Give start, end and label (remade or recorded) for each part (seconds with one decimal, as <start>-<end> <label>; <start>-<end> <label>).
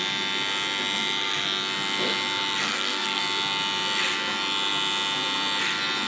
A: 0.0-2.6 recorded; 2.6-3.2 remade; 3.2-6.1 recorded